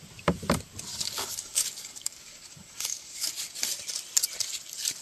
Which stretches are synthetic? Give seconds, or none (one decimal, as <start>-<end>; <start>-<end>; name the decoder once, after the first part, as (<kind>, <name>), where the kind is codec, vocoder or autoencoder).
0.9-3.3 (codec, DAC)